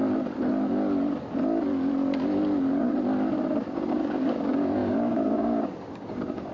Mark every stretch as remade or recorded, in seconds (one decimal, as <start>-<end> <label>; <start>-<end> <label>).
0.0-3.9 recorded; 3.9-6.5 remade